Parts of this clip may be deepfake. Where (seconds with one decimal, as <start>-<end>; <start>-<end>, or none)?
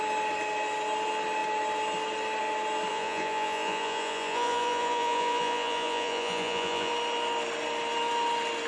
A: 2.9-6.9